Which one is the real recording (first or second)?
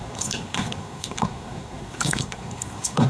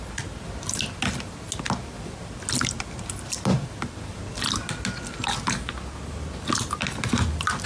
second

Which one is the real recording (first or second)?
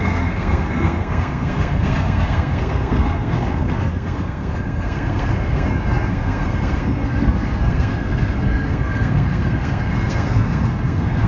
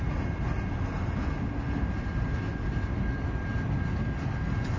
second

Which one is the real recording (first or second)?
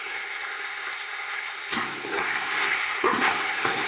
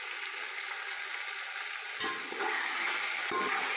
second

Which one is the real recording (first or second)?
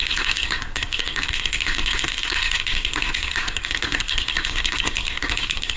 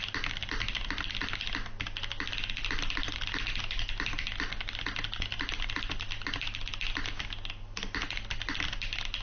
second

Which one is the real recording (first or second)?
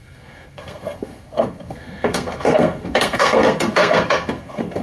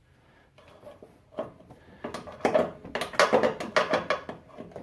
second